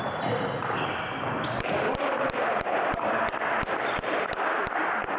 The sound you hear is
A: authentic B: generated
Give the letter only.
A